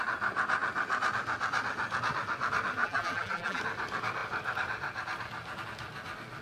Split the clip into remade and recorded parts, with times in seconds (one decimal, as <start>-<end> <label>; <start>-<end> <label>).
0.0-2.8 recorded; 2.8-3.6 remade; 3.6-6.4 recorded